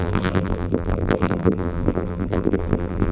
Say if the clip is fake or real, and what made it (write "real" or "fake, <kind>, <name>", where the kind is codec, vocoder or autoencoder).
fake, vocoder, BigVGAN v2